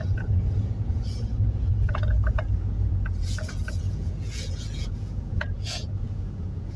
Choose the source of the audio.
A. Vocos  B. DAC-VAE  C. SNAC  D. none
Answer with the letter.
A